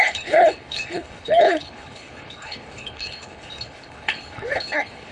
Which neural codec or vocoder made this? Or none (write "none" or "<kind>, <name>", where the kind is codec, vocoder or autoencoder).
codec, HILCodec